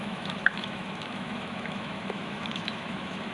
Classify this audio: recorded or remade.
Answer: remade